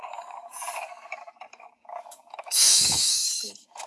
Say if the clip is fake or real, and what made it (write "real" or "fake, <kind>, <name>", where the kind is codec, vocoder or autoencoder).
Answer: fake, codec, DAC